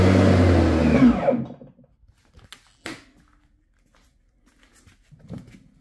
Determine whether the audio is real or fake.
real